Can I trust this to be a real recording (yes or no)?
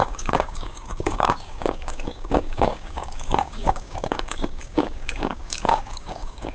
no